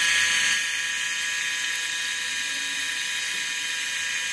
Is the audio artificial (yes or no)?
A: no